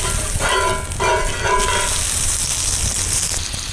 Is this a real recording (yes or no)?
yes